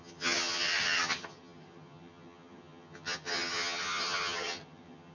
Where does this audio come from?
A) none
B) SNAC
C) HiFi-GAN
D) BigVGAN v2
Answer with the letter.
C